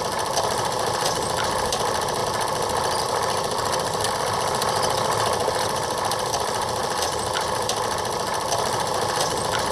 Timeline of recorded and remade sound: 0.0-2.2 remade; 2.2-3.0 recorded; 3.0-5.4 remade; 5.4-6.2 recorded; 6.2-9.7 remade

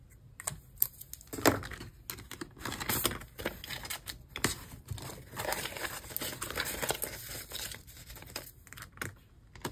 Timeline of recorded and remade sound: 0.0-9.7 recorded

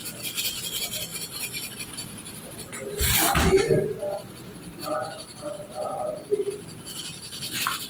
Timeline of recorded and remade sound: 0.0-0.7 recorded; 0.7-1.1 remade; 1.1-1.8 recorded; 1.8-2.7 remade; 2.7-6.5 recorded; 6.5-7.9 remade

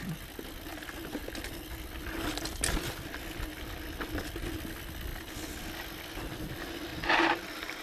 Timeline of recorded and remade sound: 0.0-7.8 recorded

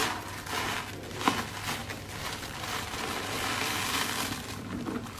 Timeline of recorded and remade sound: 0.0-0.5 remade; 0.5-1.8 recorded; 1.8-5.2 remade

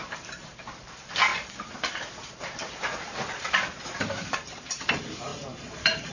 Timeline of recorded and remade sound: 0.0-6.1 remade

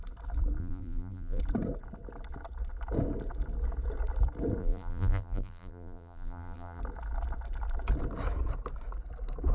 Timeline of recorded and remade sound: 0.0-0.6 recorded; 0.6-1.4 remade; 1.4-4.6 recorded; 4.6-6.8 remade; 6.8-9.5 recorded

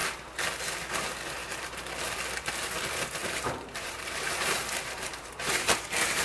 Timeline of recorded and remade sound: 0.0-3.2 recorded; 3.2-6.2 remade